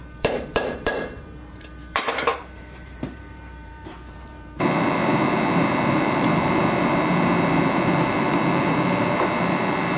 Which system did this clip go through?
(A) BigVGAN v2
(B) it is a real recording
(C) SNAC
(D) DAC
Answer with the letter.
A